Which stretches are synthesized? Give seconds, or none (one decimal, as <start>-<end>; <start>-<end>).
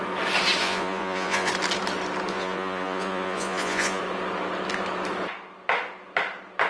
0.6-1.5; 2.3-4.0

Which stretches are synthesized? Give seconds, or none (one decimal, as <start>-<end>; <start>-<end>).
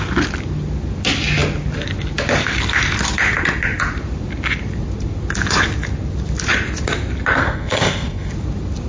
7.4-8.3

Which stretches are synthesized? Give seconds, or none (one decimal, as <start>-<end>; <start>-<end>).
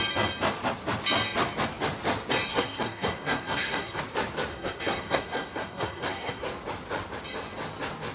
2.5-4.0; 4.5-6.4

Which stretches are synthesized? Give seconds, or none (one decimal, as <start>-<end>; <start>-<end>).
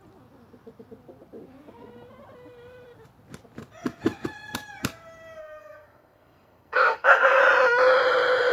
5.4-7.4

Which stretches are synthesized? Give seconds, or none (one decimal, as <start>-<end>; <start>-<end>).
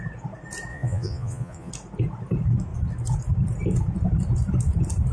0.7-1.7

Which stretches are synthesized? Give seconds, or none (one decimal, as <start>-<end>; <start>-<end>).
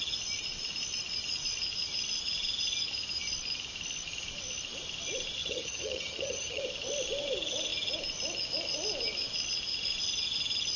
5.4-6.6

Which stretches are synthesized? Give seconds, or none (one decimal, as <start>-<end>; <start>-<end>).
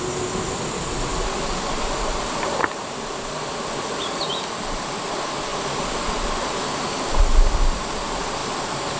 none